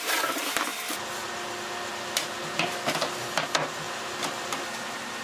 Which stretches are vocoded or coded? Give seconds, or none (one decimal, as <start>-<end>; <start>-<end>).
0.0-0.7; 3.8-5.2